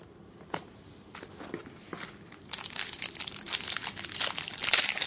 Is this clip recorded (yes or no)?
yes